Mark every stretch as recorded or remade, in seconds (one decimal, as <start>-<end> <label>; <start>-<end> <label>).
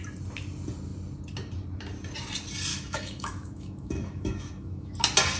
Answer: 0.0-2.7 recorded; 2.7-4.9 remade; 4.9-5.4 recorded